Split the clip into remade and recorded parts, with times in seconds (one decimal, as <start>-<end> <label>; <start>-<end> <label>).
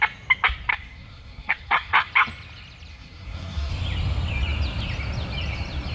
0.0-0.7 recorded; 0.7-2.1 remade; 2.1-2.9 recorded; 2.9-3.7 remade; 3.7-5.9 recorded